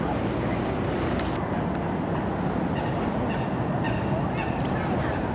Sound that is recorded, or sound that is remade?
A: recorded